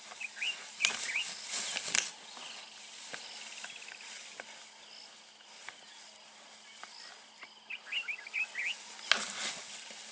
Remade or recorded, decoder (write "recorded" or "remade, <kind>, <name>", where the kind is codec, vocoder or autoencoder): recorded